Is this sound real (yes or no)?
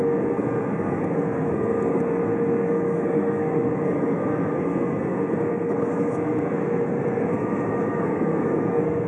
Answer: no